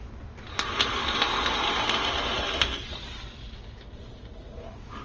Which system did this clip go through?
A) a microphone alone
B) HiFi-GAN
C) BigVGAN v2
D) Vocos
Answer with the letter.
A